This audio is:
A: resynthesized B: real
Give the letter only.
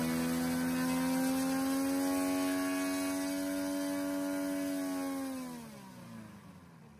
B